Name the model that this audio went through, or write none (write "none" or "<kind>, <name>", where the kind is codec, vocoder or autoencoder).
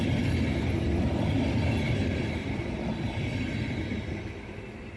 none